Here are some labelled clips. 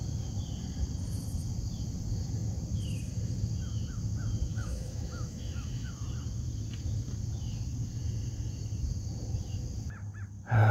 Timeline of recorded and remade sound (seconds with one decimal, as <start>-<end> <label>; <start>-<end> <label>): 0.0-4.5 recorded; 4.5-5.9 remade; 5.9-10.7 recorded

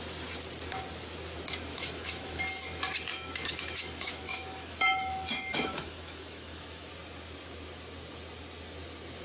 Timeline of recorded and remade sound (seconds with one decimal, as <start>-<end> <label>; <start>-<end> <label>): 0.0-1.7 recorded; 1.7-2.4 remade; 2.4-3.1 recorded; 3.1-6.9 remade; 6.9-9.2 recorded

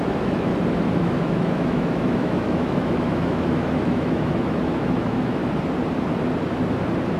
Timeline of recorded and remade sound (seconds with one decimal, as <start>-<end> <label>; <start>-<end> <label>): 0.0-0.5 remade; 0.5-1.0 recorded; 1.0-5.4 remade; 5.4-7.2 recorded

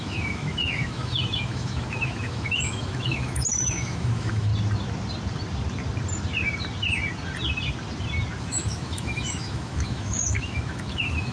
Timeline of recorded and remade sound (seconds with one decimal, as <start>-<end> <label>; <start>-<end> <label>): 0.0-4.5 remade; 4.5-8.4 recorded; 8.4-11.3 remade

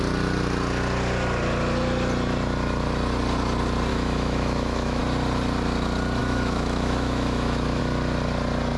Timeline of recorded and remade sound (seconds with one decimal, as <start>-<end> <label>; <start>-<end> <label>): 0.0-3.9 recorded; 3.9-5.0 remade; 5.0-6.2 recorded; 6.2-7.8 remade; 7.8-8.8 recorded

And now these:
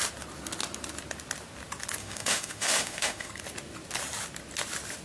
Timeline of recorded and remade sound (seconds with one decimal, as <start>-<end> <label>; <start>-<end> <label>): 0.0-2.0 recorded; 2.0-3.3 remade; 3.3-5.0 recorded

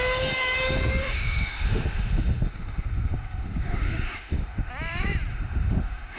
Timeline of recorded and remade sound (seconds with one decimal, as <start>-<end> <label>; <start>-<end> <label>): 0.0-1.0 recorded; 1.0-4.7 remade; 4.7-5.3 recorded; 5.3-6.2 remade